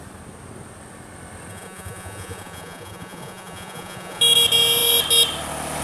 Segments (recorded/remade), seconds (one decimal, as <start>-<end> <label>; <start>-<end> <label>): 0.0-1.5 recorded; 1.5-4.2 remade; 4.2-5.8 recorded